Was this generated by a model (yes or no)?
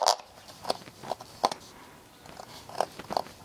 no